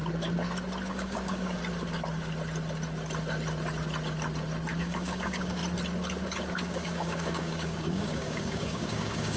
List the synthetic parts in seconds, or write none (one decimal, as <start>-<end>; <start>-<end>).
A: 0.9-1.6; 4.8-5.6; 6.5-9.4

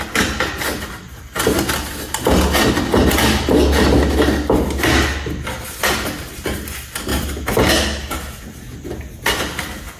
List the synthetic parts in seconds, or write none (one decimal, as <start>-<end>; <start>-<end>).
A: none

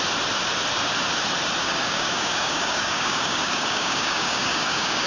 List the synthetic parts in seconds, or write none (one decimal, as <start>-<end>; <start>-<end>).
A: 1.6-5.1

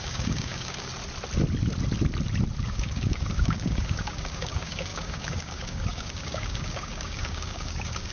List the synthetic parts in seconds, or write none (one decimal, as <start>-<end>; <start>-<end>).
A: 0.0-0.9; 2.6-8.1

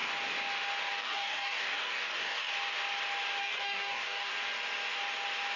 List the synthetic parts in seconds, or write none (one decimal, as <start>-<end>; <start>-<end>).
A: 0.8-2.5; 3.4-4.3

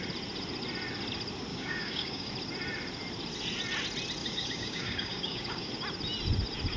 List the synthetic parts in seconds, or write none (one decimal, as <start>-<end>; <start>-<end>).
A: 1.5-2.3; 4.2-5.7

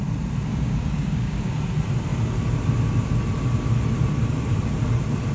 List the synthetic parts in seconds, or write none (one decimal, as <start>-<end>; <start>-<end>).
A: 0.5-1.5